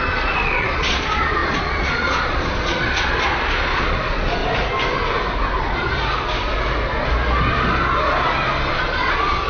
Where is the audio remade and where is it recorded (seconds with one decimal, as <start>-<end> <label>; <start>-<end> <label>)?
0.0-4.4 remade; 4.4-5.6 recorded; 5.6-6.0 remade; 6.0-8.7 recorded; 8.7-9.5 remade